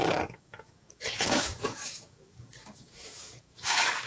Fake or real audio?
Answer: fake